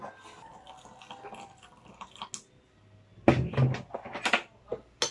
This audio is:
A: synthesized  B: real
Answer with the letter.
B